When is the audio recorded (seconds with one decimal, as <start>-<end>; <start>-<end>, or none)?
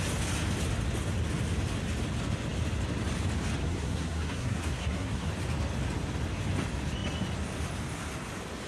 0.0-3.6; 5.3-8.7